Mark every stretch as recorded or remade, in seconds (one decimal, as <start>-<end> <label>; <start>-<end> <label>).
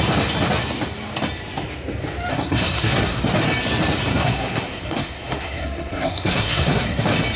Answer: 0.0-2.3 recorded; 2.3-3.2 remade; 3.2-4.1 recorded; 4.1-7.0 remade; 7.0-7.4 recorded